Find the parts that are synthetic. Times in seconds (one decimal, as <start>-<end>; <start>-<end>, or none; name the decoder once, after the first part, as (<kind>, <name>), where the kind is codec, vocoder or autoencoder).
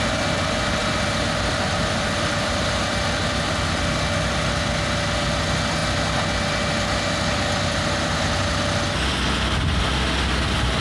none